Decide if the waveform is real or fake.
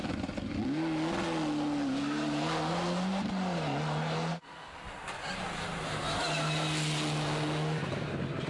real